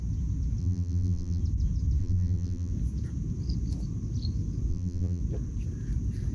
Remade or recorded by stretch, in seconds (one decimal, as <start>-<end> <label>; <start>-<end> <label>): 0.0-0.6 recorded; 0.6-1.4 remade; 1.4-2.0 recorded; 2.0-2.7 remade; 2.7-4.7 recorded; 4.7-5.2 remade; 5.2-6.3 recorded